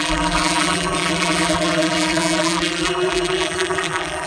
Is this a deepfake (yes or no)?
yes